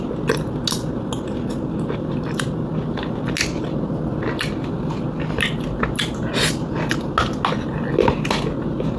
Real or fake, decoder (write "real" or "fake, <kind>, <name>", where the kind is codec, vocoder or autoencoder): real